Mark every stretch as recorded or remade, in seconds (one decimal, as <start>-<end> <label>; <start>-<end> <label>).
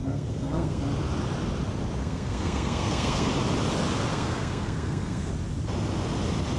0.0-0.8 remade; 0.8-2.0 recorded; 2.0-3.3 remade; 3.3-4.1 recorded; 4.1-5.3 remade; 5.3-6.6 recorded